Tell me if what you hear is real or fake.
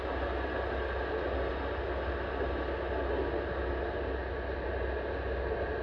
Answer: real